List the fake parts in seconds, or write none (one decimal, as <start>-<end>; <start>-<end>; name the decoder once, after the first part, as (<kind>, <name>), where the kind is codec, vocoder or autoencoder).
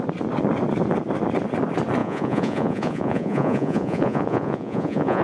2.0-5.2 (vocoder, Vocos)